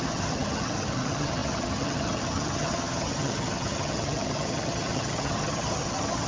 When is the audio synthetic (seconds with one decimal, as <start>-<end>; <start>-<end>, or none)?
0.0-6.3